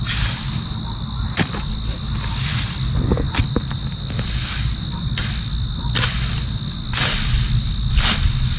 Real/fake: real